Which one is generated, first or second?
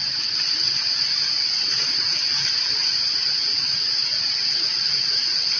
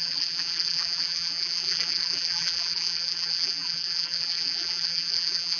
second